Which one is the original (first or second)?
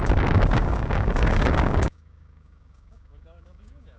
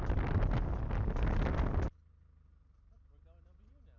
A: second